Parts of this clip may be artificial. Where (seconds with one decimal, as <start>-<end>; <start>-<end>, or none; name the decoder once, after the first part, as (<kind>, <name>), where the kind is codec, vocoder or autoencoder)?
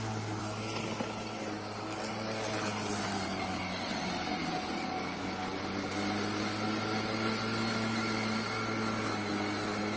none